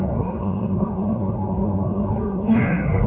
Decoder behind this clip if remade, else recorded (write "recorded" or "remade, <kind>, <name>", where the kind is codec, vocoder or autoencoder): remade, codec, SNAC